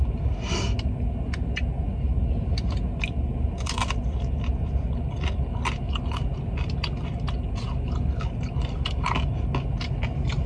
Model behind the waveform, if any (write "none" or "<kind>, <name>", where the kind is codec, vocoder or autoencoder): none